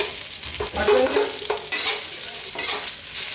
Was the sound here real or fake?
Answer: real